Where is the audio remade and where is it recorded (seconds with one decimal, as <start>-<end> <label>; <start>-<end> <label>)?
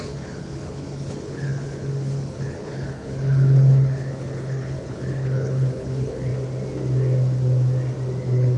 0.0-6.3 remade; 6.3-8.2 recorded; 8.2-8.6 remade